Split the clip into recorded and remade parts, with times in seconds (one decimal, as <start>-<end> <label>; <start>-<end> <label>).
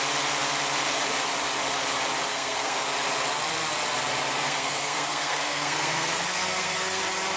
0.0-2.3 recorded; 2.3-2.8 remade; 2.8-4.4 recorded; 4.4-7.0 remade; 7.0-7.4 recorded